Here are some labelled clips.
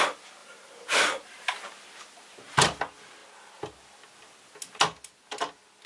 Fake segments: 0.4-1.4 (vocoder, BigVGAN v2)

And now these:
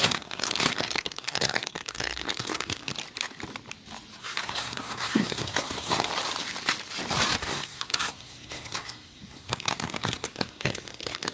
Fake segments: 0.0-2.9 (codec, SNAC); 4.2-6.1; 7.4-11.3

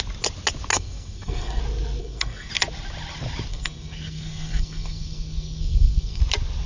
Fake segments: 0.7-1.6 (codec, SNAC); 2.0-2.5; 3.5-6.2

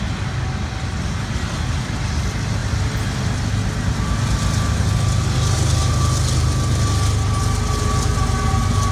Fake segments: none